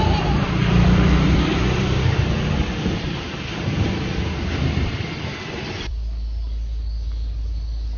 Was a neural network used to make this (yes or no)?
yes